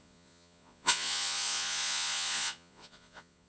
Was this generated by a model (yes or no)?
yes